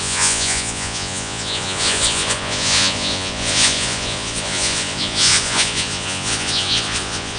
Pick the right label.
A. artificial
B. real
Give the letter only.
A